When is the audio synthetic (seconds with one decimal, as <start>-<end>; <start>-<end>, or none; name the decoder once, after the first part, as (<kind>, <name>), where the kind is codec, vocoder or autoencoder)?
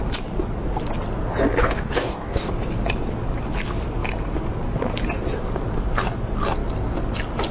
1.6-2.5 (codec, DAC)